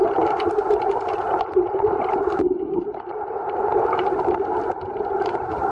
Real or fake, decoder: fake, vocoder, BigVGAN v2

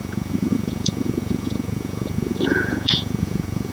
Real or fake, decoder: fake, vocoder, Vocos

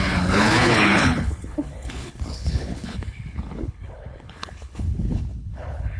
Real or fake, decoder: fake, codec, HILCodec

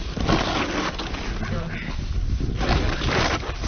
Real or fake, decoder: real